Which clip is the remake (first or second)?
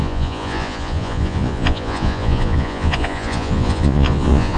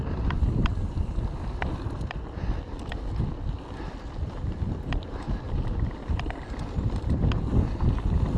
first